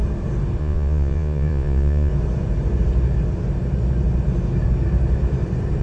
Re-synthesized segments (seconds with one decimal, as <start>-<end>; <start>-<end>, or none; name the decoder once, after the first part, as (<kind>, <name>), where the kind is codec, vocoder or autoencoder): 0.6-2.1 (vocoder, Vocos)